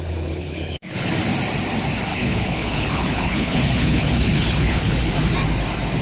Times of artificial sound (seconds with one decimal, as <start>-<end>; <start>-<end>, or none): 0.0-1.1; 2.1-5.1

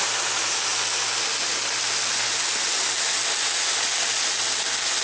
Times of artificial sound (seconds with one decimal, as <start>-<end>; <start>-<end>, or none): none

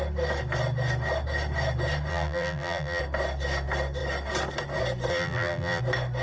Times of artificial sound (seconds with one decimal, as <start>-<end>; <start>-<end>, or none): 2.1-3.0; 5.1-5.8

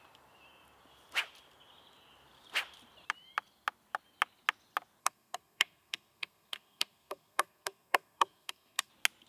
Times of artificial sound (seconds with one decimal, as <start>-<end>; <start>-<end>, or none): 5.0-8.9

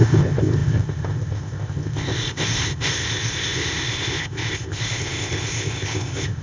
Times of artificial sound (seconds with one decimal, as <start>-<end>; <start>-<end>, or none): 0.0-6.4

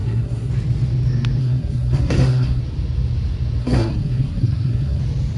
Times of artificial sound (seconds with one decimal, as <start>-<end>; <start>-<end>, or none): 0.0-0.5; 1.4-2.6; 3.6-5.0